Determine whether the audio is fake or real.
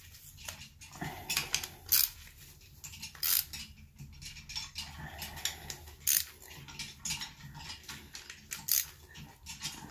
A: real